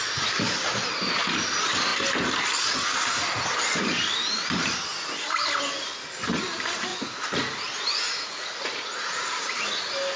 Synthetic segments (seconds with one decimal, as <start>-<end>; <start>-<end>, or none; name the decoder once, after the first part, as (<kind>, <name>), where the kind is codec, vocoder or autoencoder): 6.9-9.5 (vocoder, Vocos)